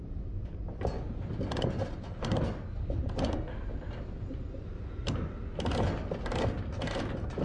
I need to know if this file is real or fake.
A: real